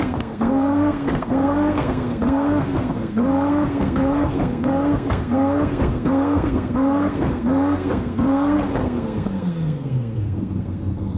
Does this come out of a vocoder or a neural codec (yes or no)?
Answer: yes